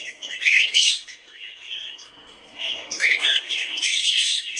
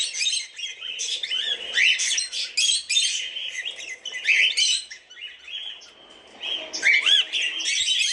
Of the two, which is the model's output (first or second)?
first